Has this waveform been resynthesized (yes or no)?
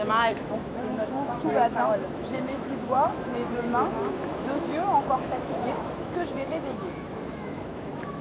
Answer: yes